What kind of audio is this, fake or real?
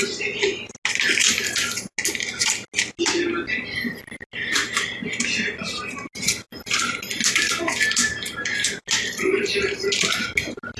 real